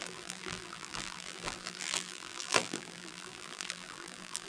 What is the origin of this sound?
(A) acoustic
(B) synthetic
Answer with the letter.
B